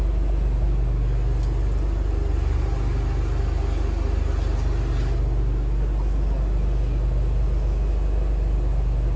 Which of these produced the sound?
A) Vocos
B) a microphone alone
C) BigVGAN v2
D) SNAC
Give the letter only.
B